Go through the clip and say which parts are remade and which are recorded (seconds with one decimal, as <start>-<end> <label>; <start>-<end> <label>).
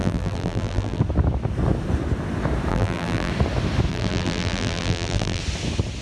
0.0-1.0 remade; 1.0-2.7 recorded; 2.7-3.3 remade; 3.3-3.9 recorded; 3.9-5.4 remade; 5.4-6.0 recorded